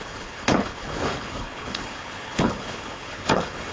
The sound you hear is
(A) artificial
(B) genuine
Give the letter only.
A